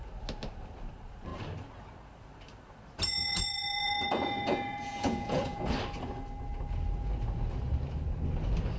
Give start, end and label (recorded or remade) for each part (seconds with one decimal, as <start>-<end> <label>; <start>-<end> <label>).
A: 0.0-3.1 recorded; 3.1-5.7 remade; 5.7-8.8 recorded